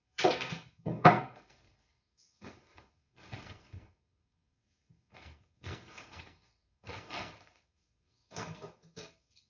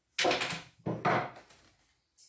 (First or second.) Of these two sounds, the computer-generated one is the first